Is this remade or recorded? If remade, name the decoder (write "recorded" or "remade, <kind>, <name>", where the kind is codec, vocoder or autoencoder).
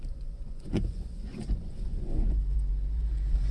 remade, vocoder, Vocos